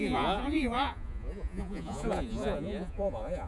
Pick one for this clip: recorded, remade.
remade